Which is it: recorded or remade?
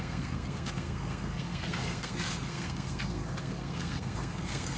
remade